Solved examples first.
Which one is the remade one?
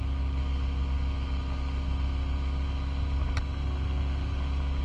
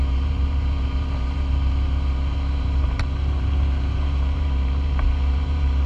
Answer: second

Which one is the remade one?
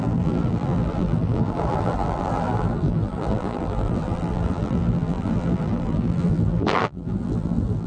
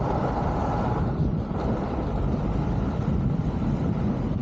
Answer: first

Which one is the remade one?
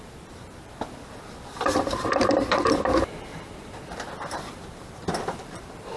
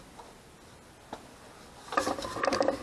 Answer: first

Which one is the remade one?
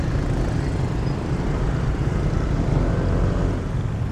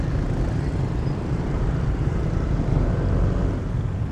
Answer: second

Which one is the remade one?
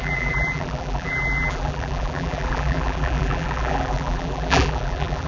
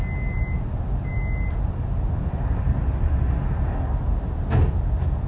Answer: first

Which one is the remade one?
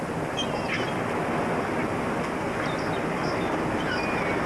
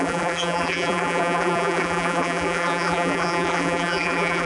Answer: second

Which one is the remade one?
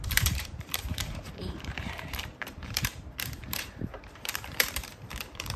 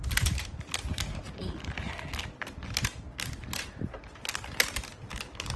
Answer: first